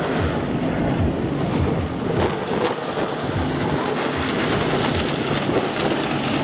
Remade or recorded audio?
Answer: recorded